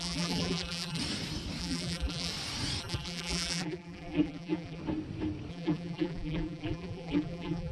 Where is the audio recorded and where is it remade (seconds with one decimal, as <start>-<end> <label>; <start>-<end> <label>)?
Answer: 0.0-1.0 remade; 1.0-1.6 recorded; 1.6-2.3 remade; 2.3-2.8 recorded; 2.8-4.8 remade; 4.8-5.5 recorded; 5.5-7.7 remade